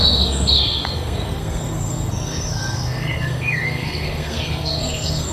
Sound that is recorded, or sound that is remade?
remade